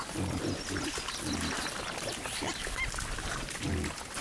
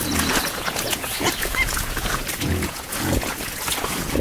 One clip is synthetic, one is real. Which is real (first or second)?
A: first